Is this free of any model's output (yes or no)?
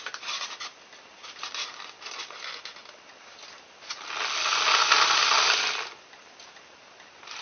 yes